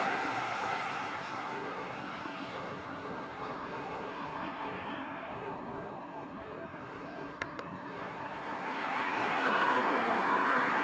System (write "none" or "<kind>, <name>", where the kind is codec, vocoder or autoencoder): codec, SNAC